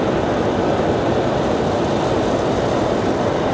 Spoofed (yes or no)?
no